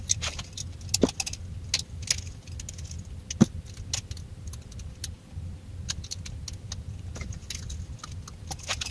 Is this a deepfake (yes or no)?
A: no